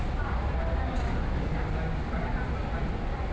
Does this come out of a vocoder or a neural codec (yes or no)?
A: no